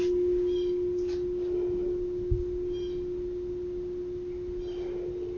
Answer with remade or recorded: recorded